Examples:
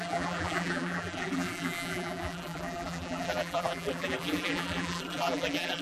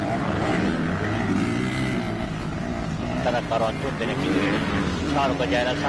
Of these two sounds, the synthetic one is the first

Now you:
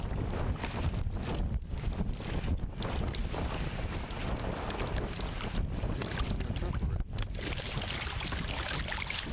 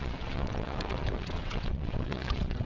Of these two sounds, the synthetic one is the second